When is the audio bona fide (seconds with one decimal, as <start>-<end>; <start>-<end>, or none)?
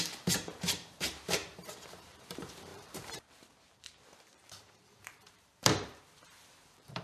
1.4-2.0